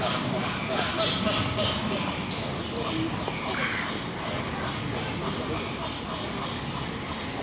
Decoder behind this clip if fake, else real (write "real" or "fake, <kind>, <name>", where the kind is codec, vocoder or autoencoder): real